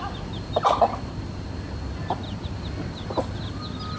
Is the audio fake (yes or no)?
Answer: no